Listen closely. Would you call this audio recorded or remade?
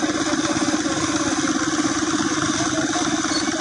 recorded